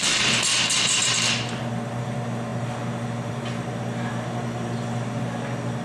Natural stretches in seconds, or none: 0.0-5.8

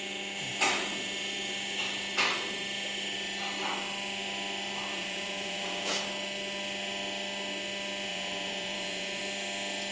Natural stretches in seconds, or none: 0.0-4.9; 5.9-8.1; 9.2-9.9

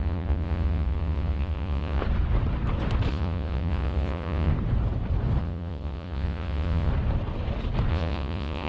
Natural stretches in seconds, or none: 2.0-3.1; 4.5-5.4; 6.9-7.9

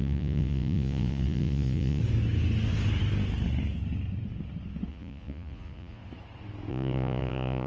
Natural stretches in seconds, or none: 2.0-4.9; 6.0-6.7